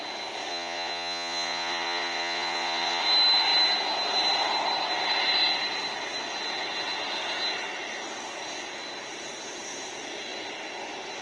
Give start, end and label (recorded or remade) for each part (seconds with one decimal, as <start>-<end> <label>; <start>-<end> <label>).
0.0-0.5 recorded; 0.5-3.0 remade; 3.0-11.2 recorded